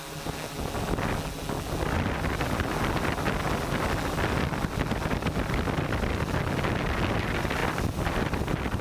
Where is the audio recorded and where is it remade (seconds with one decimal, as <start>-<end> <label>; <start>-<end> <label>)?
0.0-7.6 recorded; 7.6-8.8 remade